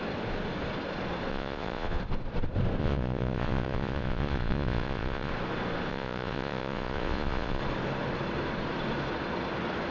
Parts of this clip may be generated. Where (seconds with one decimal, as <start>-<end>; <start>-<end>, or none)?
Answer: 1.3-2.0; 2.8-5.3; 5.9-7.6